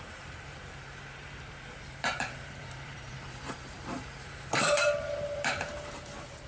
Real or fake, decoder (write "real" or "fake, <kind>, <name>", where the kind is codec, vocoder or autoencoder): fake, vocoder, BigVGAN v2